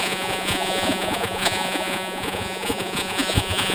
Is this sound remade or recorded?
remade